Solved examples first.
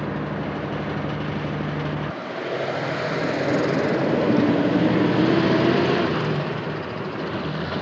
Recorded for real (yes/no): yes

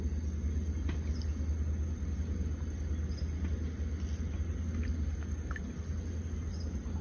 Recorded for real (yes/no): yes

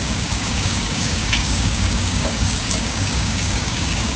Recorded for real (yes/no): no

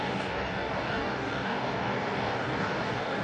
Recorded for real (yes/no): no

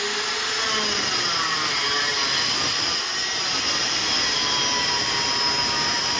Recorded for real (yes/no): yes